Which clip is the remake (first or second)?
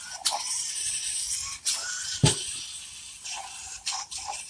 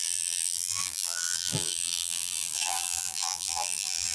second